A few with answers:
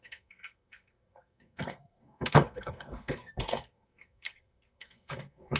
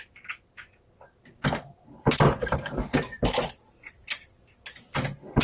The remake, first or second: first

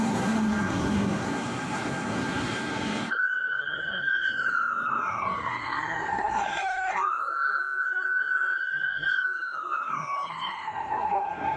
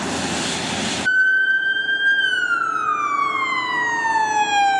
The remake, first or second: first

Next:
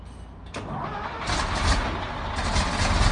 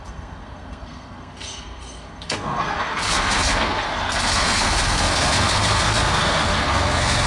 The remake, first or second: second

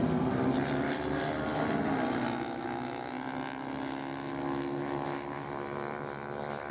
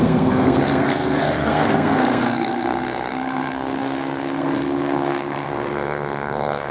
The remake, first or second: second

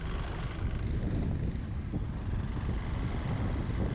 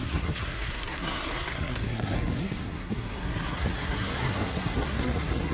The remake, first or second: second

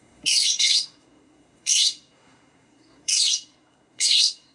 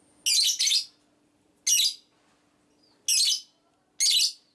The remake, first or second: first